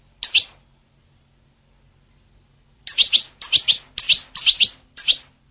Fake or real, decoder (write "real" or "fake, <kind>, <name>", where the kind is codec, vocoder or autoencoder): real